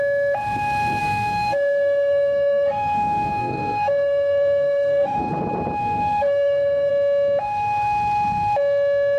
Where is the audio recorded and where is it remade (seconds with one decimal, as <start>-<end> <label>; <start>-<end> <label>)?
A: 0.0-1.0 recorded; 1.0-5.3 remade; 5.3-5.8 recorded; 5.8-6.9 remade; 6.9-9.2 recorded